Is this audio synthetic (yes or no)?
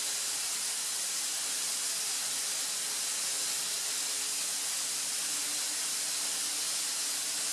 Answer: no